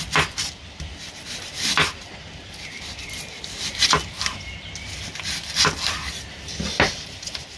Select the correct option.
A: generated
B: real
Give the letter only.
B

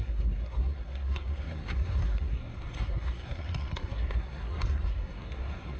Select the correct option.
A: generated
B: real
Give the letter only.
A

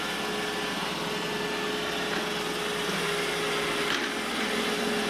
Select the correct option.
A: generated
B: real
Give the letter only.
B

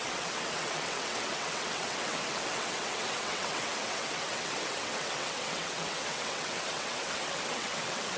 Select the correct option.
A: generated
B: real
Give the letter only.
A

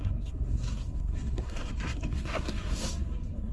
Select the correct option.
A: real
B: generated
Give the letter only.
B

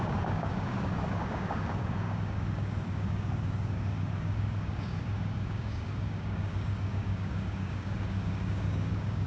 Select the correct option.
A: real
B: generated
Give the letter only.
B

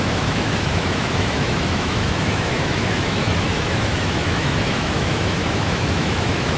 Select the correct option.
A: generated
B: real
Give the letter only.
A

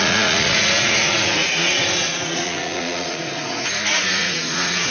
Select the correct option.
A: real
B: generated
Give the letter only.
B